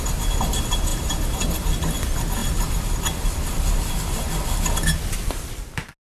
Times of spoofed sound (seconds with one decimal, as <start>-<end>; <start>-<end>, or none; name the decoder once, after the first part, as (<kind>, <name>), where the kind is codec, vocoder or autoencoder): 0.9-1.4 (vocoder, BigVGAN v2)